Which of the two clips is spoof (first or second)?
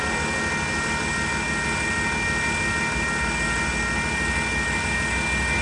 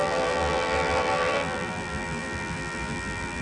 second